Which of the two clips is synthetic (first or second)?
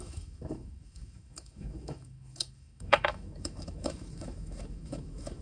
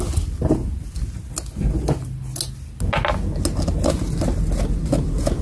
first